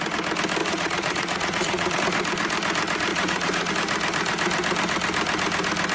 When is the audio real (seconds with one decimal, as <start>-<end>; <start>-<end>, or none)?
0.0-0.6; 2.0-3.1; 3.7-5.9

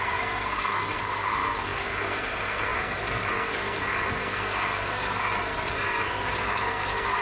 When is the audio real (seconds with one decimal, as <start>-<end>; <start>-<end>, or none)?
none